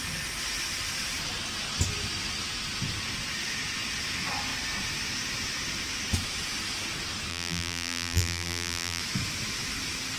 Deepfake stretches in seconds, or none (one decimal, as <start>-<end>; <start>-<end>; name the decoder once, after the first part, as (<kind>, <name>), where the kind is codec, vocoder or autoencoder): 7.3-9.0 (vocoder, BigVGAN v2)